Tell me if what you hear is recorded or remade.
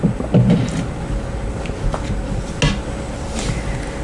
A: recorded